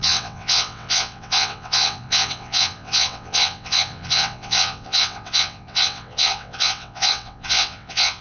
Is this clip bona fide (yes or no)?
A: no